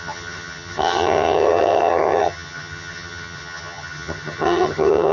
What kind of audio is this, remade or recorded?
remade